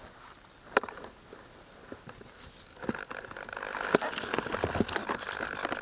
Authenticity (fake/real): real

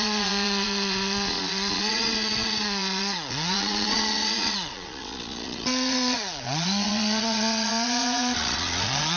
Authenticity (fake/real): fake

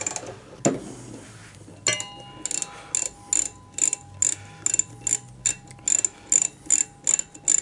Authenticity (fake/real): real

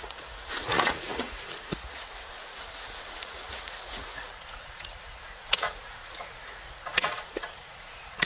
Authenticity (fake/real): fake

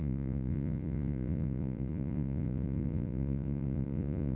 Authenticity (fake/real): fake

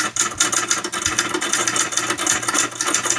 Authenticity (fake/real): real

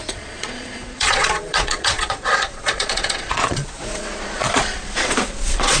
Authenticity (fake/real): fake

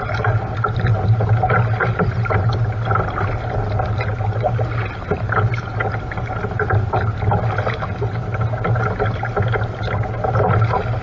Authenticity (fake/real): real